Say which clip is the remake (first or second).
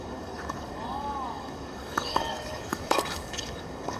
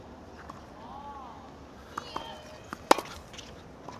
first